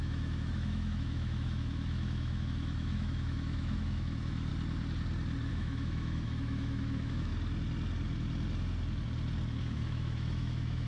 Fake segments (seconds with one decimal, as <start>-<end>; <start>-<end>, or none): 0.0-4.5; 5.5-7.3; 9.6-10.9